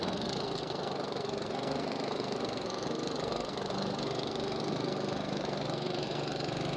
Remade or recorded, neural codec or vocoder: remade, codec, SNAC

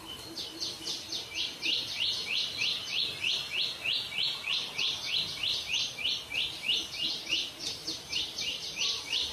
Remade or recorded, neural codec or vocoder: recorded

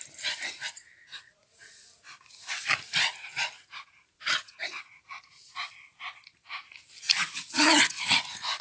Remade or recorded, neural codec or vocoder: recorded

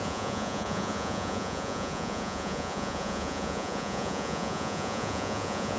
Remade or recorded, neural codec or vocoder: remade, vocoder, Vocos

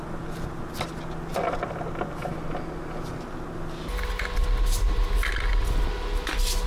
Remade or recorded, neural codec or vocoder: recorded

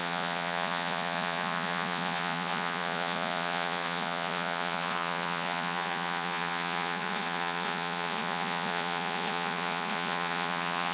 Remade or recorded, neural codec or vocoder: remade, vocoder, Vocos